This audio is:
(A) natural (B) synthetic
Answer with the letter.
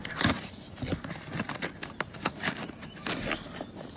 A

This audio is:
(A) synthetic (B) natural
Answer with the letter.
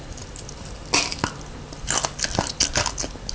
B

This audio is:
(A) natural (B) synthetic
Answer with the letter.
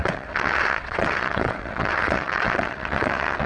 B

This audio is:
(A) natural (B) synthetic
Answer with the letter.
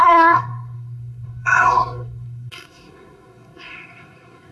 B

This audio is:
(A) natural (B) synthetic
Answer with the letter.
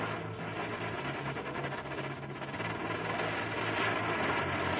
A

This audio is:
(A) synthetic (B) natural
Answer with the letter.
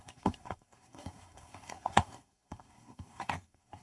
A